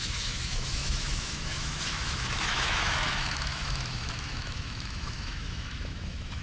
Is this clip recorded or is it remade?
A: remade